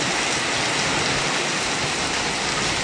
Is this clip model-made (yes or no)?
no